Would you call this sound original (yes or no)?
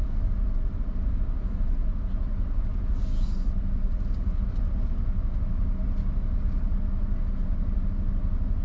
yes